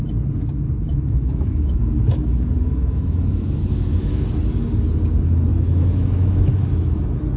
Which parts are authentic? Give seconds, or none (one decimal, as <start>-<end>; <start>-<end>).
0.0-0.9; 4.3-5.5; 7.0-7.4